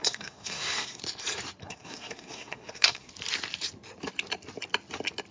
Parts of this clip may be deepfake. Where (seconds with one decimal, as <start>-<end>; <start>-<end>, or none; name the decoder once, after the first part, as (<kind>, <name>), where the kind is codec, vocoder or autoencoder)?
0.0-1.0 (codec, SNAC); 1.6-3.1